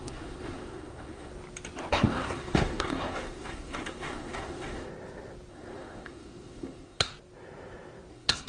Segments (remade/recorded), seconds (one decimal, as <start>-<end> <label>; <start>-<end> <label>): 0.0-1.3 remade; 1.3-1.9 recorded; 1.9-4.9 remade; 4.9-5.5 recorded; 5.5-7.1 remade; 7.1-8.1 recorded; 8.1-8.5 remade